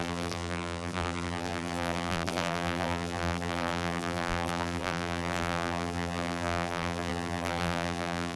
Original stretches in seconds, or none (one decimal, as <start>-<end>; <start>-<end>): none